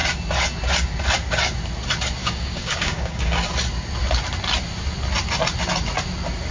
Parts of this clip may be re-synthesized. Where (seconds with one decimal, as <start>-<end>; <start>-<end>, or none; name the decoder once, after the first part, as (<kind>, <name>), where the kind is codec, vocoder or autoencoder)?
2.2-3.5 (codec, DAC)